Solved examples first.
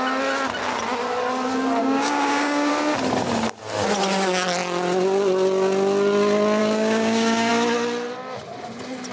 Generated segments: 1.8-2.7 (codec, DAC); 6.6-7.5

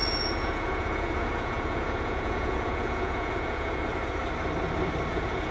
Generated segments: 0.0-4.2 (vocoder, Vocos); 5.1-5.5

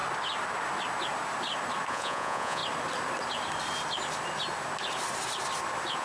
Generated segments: 1.9-2.6 (vocoder, Vocos)

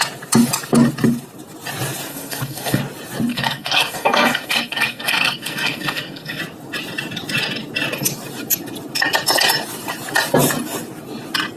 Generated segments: 2.1-2.8 (codec, SNAC); 3.3-6.4

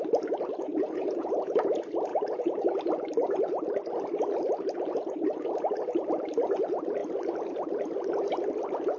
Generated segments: 0.7-1.6 (vocoder, Vocos); 2.1-2.7

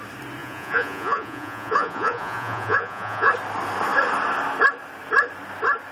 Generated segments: 0.4-3.3 (vocoder, Vocos)

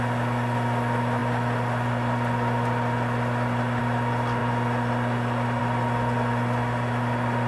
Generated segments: none